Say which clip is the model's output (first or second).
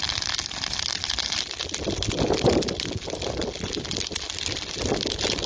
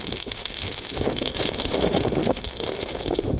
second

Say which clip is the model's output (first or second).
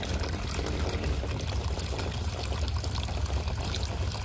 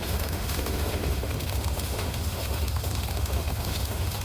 second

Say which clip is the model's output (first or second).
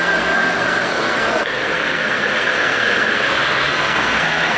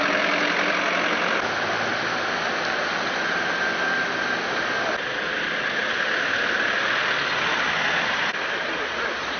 first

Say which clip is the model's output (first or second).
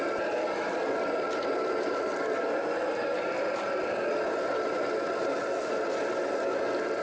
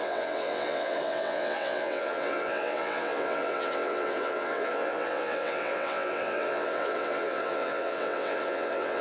second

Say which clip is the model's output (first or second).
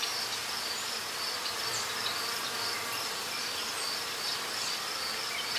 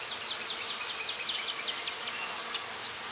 first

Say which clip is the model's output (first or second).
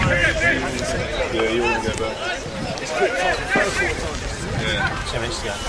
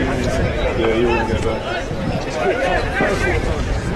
second